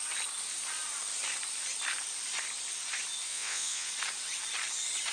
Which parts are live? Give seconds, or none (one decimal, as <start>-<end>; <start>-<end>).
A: 0.0-3.3; 3.9-5.1